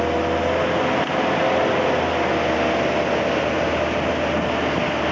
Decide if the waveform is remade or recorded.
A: recorded